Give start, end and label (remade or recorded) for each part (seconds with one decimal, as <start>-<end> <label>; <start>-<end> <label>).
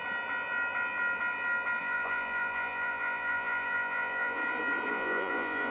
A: 0.0-1.8 recorded; 1.8-4.4 remade; 4.4-4.9 recorded; 4.9-5.7 remade